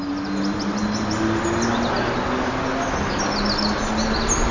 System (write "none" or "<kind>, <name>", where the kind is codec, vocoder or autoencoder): none